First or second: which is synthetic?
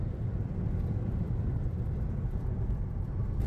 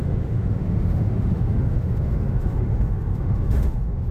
second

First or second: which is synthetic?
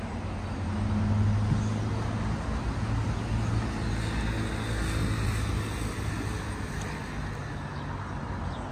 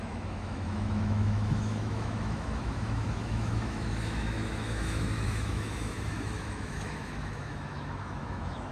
second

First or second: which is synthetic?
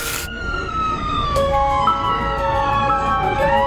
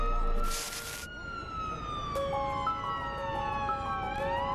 first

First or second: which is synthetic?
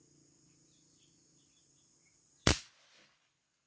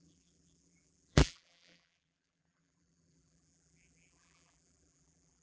second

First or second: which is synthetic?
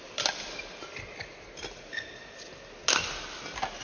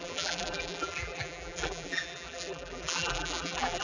second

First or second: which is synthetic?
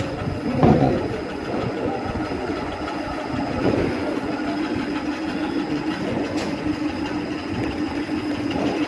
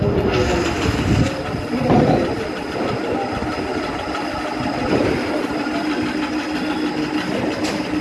first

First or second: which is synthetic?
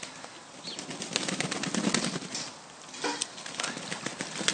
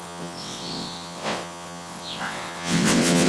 second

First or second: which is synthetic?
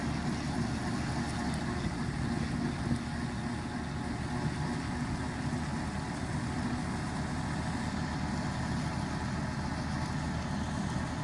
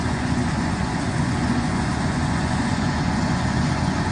second